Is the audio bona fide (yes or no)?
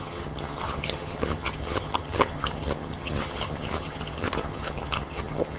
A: no